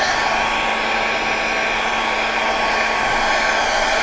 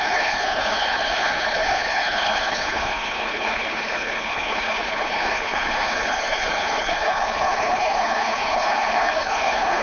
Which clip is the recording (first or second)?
first